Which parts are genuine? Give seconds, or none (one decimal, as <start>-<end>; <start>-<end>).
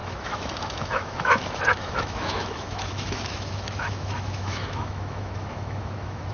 none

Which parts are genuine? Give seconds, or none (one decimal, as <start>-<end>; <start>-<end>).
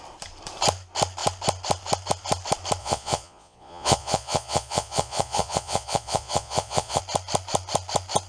0.0-2.8; 7.0-8.3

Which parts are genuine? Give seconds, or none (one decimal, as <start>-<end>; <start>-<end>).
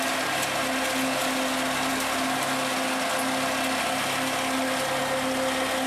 0.0-5.9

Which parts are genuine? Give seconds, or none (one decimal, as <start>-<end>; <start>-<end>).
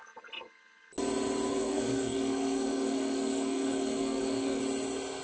0.0-1.5; 4.6-5.2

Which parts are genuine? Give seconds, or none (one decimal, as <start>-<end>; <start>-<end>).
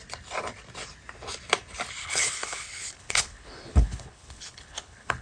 0.0-2.0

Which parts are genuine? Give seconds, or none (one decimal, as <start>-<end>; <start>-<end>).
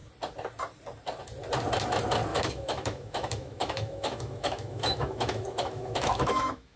0.0-2.3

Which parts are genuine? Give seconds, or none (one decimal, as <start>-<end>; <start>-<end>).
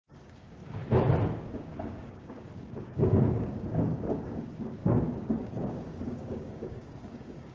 0.8-1.5